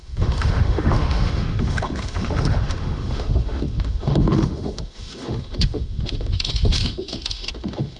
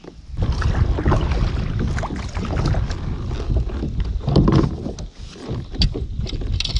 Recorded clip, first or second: second